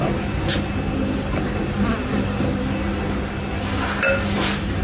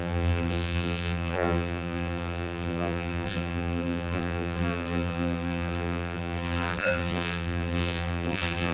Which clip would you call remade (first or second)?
second